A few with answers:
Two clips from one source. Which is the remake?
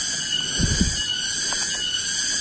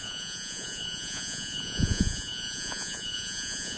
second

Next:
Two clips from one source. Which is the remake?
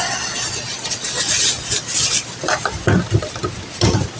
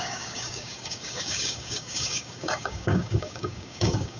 second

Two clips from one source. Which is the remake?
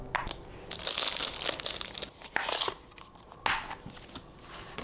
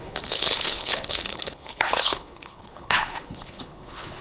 second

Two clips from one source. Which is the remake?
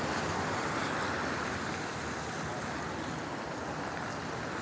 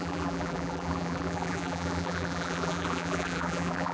second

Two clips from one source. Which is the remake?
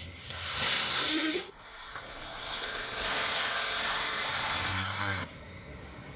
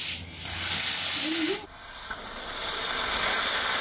first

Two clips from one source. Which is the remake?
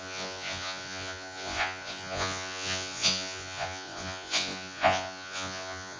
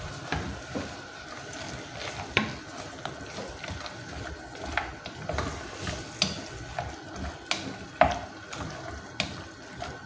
first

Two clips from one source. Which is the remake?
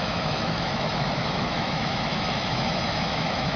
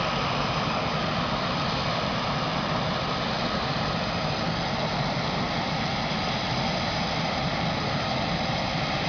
first